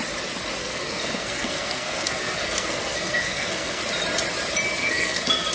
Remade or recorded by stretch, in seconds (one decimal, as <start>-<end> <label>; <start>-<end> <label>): 0.0-0.6 recorded; 0.6-3.8 remade; 3.8-4.8 recorded; 4.8-5.5 remade